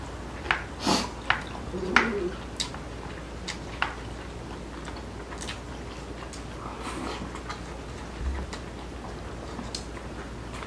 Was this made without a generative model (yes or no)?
yes